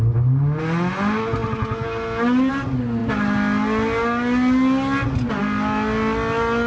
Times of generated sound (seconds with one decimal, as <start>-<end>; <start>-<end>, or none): none